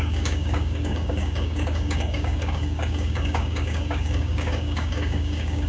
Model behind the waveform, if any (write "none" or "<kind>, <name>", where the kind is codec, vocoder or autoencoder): codec, DAC